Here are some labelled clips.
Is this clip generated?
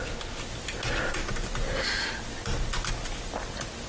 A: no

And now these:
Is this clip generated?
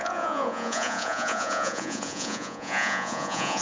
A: yes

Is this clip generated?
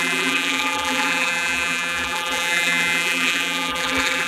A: yes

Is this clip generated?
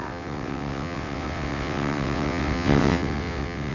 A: yes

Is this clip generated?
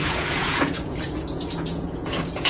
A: yes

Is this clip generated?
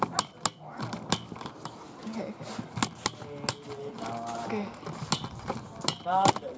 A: no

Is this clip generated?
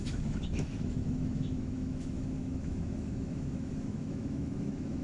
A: yes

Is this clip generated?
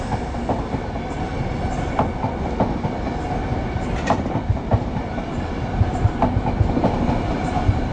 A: no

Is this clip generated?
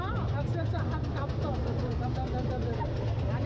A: no